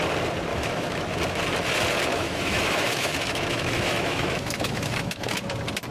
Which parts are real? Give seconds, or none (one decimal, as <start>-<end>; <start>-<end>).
0.0-0.5; 1.1-2.1; 5.4-5.9